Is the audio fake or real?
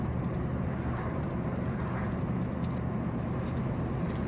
fake